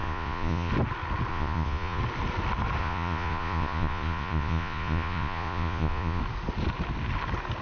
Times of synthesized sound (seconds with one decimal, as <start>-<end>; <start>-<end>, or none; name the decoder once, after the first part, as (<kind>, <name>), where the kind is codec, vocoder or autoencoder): 0.0-0.7 (vocoder, Vocos); 1.3-2.0; 2.8-6.2